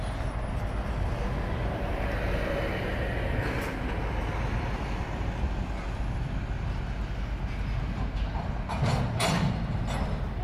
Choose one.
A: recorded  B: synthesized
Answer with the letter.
A